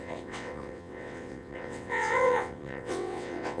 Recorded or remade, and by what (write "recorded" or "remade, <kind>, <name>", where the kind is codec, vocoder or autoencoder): remade, vocoder, WaveNeXt